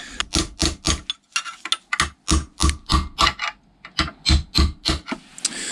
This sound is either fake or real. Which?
real